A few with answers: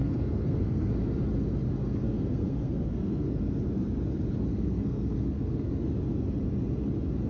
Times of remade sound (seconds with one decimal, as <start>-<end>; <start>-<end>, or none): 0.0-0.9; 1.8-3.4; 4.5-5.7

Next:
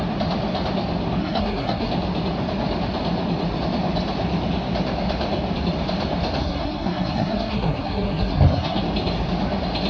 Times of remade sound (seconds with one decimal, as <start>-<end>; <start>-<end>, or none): 1.2-1.9; 6.4-8.8

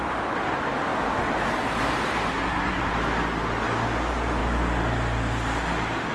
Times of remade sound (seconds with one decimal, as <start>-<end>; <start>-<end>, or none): 2.3-2.9

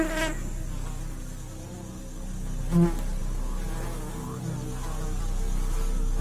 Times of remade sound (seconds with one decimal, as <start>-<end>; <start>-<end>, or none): none